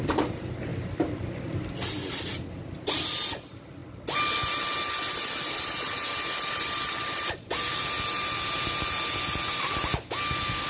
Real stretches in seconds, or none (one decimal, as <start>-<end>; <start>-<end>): 0.0-10.7